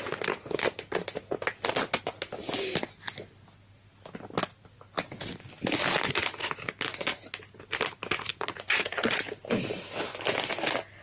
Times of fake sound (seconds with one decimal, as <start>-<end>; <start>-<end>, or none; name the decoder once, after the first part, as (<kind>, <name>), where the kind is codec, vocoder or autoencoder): 8.3-9.3 (vocoder, Vocos)